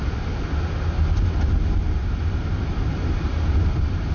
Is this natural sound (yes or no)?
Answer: yes